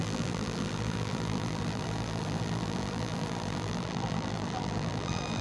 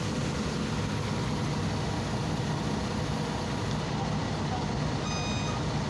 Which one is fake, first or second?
first